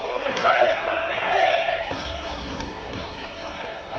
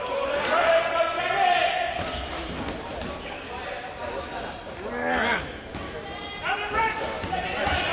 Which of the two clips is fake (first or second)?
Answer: first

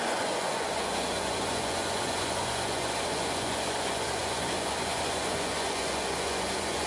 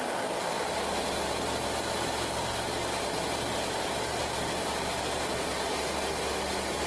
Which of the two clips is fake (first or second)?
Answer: first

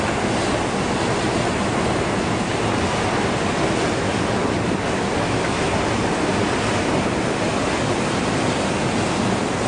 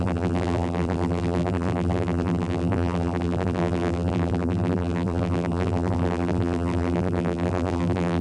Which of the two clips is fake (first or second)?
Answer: second